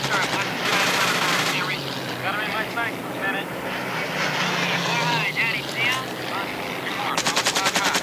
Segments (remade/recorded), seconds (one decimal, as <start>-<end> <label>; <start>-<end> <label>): 0.0-8.0 recorded